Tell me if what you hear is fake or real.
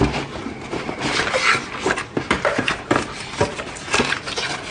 real